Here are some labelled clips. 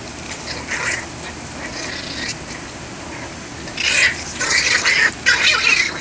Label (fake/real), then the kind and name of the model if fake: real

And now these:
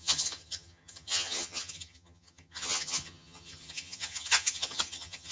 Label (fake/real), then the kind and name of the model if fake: fake, vocoder, HiFi-GAN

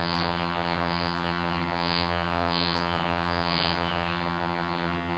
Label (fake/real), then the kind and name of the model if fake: fake, vocoder, HiFi-GAN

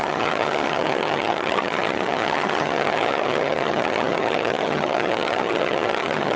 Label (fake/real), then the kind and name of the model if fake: fake, vocoder, HiFi-GAN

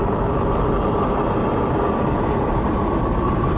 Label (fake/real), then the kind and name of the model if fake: real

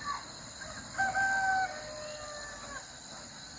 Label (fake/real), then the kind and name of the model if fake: real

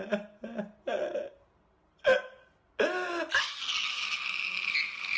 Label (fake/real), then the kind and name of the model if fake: real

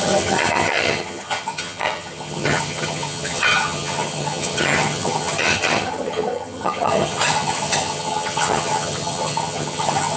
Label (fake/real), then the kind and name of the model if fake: fake, vocoder, HiFi-GAN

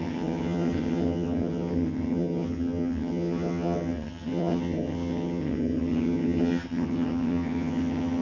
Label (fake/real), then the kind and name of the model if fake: fake, vocoder, HiFi-GAN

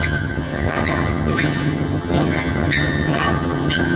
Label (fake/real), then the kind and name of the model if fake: fake, vocoder, HiFi-GAN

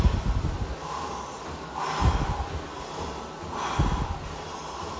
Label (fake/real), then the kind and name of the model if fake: real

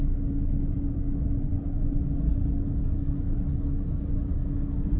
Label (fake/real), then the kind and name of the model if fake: real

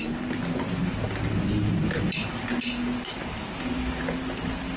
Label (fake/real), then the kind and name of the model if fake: real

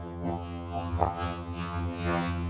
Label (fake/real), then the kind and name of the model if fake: fake, vocoder, HiFi-GAN